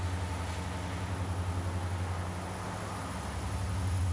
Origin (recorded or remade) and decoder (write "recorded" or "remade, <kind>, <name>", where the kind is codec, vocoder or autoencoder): recorded